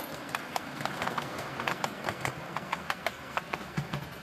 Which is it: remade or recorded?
remade